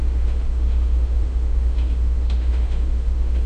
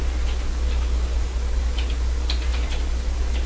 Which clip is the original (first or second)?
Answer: second